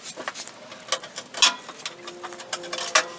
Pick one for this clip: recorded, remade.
recorded